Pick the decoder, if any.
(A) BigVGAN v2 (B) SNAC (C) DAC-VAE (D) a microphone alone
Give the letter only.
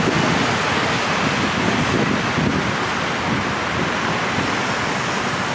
D